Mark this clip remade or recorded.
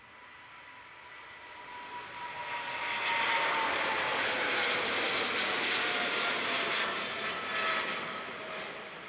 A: recorded